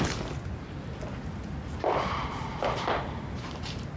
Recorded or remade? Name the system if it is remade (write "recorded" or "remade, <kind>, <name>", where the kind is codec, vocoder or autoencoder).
remade, vocoder, BigVGAN v2